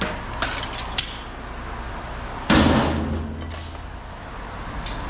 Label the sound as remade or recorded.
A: recorded